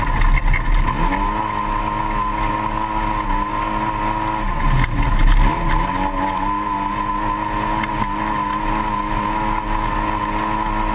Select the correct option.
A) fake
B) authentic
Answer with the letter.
B